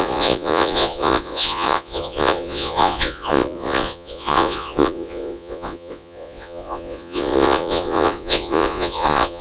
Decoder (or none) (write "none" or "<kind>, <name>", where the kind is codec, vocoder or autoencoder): vocoder, Vocos